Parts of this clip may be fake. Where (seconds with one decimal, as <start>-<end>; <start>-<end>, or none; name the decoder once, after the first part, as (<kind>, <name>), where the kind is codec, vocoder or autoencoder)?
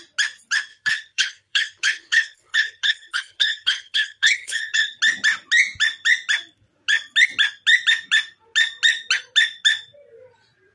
0.7-5.0 (codec, HILCodec)